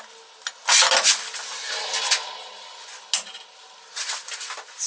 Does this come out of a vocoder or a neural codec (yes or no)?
no